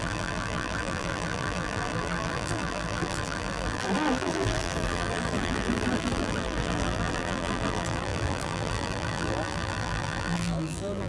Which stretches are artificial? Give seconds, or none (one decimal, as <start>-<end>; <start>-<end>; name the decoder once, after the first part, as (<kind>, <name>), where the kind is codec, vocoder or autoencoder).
0.0-11.1 (vocoder, BigVGAN v2)